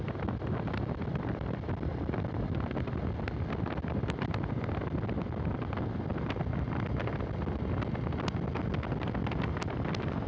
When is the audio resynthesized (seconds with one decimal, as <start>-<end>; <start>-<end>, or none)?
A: none